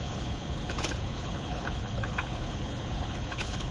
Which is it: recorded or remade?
remade